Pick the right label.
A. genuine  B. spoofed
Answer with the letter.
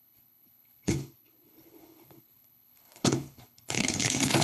B